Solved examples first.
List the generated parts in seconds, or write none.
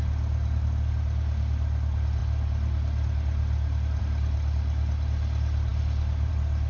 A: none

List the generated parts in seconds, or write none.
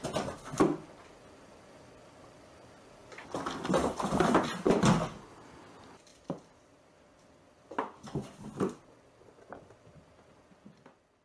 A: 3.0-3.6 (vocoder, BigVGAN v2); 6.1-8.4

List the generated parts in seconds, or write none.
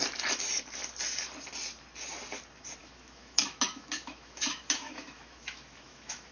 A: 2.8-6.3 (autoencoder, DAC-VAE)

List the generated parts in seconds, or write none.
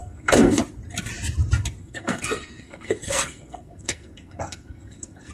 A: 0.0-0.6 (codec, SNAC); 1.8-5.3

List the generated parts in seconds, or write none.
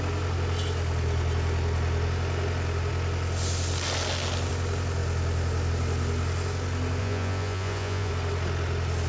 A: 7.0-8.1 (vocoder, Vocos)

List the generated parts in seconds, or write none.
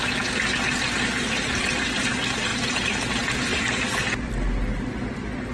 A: none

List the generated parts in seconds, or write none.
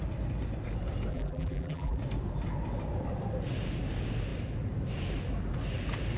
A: 1.1-2.0 (vocoder, BigVGAN v2)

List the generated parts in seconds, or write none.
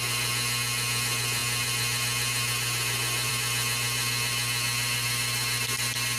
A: none